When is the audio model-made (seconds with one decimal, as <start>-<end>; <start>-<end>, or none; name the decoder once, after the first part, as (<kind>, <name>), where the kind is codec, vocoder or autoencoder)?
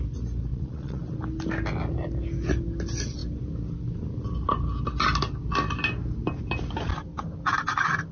0.5-1.0 (vocoder, Vocos)